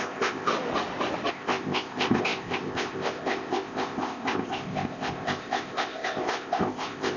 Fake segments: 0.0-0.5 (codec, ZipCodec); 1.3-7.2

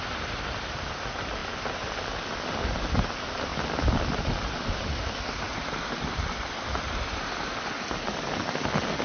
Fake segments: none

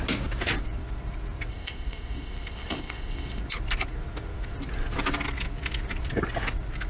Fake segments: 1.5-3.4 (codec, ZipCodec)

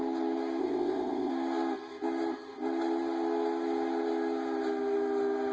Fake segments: 0.6-1.3 (codec, ZipCodec)

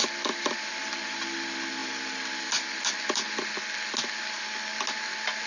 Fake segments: none